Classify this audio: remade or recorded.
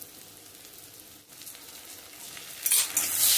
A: recorded